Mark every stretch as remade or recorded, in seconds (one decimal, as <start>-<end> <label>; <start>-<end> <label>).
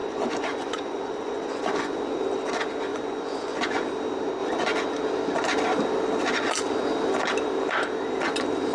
0.0-2.1 remade; 2.1-2.9 recorded; 2.9-3.8 remade; 3.8-8.7 recorded